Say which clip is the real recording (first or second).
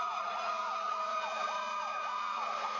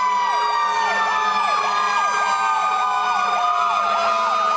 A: second